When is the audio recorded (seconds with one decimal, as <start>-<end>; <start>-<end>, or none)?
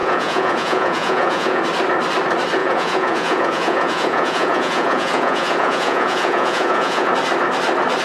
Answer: 1.6-2.6; 7.1-8.0